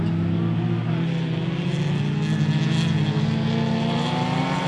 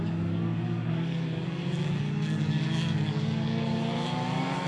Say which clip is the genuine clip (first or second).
first